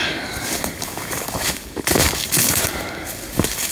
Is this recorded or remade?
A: remade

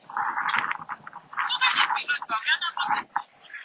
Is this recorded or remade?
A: recorded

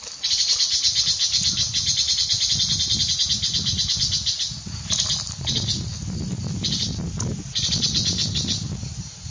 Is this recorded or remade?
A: recorded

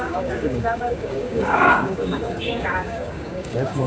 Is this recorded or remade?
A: remade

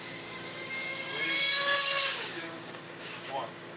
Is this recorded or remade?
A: remade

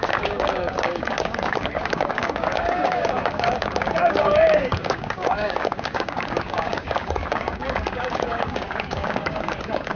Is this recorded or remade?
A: remade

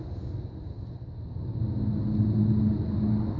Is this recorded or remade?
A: recorded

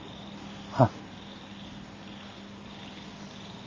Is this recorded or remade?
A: recorded